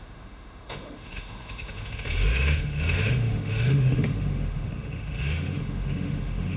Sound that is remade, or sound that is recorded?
remade